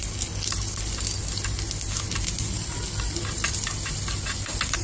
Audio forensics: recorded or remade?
recorded